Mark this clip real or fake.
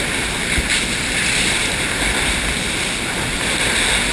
real